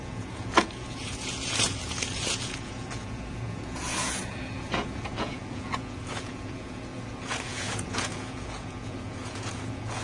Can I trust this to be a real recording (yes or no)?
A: no